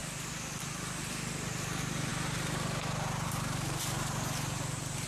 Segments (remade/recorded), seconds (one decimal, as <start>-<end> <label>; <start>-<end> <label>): 0.0-5.1 remade

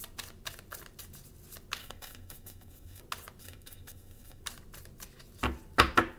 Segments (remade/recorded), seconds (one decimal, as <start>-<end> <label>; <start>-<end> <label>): 0.0-1.8 recorded; 1.8-3.0 remade; 3.0-3.4 recorded; 3.4-4.4 remade; 4.4-6.2 recorded

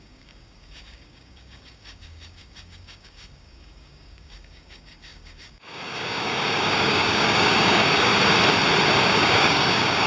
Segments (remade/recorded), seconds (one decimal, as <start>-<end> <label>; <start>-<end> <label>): 0.0-8.1 remade; 8.1-9.0 recorded; 9.0-10.1 remade

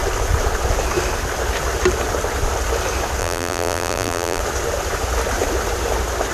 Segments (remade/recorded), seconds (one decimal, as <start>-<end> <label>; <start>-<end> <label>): 0.0-3.2 recorded; 3.2-4.4 remade; 4.4-6.3 recorded

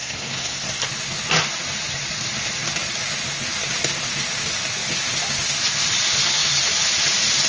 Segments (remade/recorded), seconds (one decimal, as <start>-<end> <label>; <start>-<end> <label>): 0.0-0.8 remade; 0.8-7.5 recorded

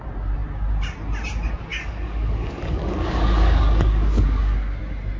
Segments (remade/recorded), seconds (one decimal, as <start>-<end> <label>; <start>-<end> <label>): 0.0-1.7 recorded; 1.7-4.8 remade; 4.8-5.2 recorded